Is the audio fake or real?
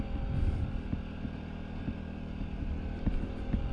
real